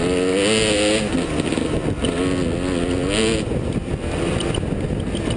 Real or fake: real